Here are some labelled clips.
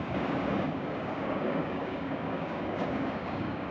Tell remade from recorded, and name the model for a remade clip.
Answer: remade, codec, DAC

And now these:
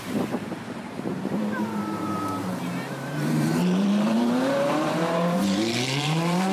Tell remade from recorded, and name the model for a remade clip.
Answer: remade, vocoder, BigVGAN v2